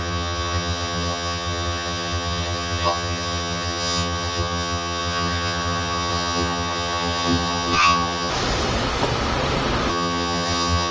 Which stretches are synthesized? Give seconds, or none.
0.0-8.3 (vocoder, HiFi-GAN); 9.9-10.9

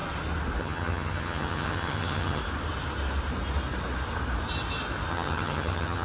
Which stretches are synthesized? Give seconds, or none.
0.6-2.4 (vocoder, HiFi-GAN); 5.1-6.0